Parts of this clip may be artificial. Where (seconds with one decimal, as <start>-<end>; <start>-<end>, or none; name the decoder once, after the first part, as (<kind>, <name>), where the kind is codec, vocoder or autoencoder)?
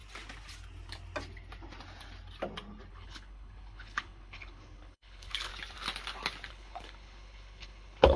2.9-5.5 (codec, HILCodec); 6.5-8.2